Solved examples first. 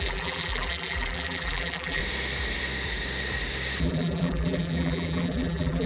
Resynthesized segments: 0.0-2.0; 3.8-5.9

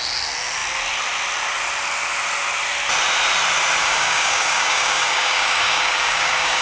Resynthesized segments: 3.8-6.6

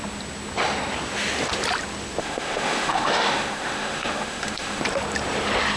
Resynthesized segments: 2.2-4.8

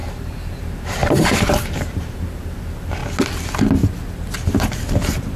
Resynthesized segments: 0.0-3.0